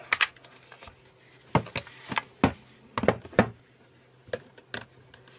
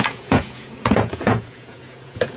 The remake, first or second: second